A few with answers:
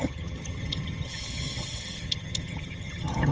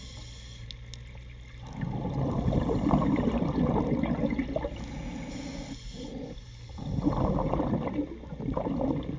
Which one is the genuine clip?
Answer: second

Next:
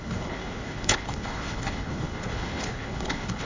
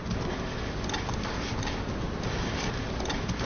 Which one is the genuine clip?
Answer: second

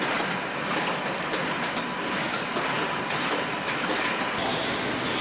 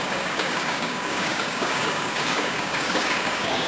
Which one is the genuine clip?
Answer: first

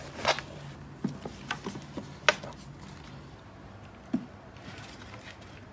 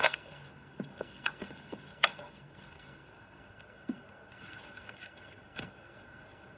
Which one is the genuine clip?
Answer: first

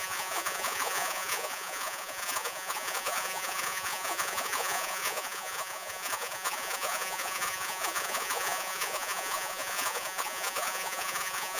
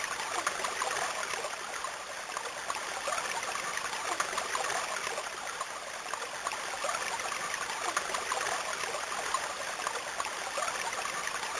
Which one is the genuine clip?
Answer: second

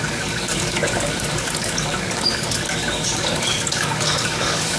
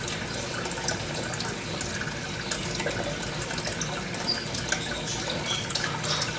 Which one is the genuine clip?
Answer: second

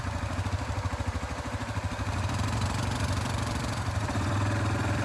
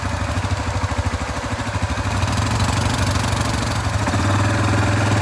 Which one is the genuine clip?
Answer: second